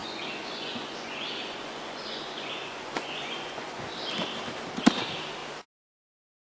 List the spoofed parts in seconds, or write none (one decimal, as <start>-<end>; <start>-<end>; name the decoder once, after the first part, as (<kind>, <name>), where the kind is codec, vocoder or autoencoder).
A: 0.0-3.9 (vocoder, Vocos)